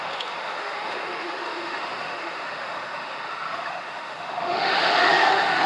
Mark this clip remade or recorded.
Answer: remade